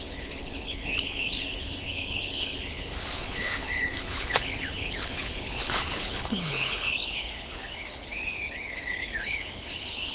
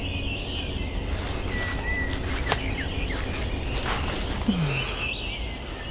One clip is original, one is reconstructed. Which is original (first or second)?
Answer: second